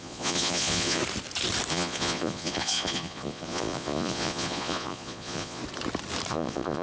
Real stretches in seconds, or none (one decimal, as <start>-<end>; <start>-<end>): 1.0-1.7; 5.6-6.3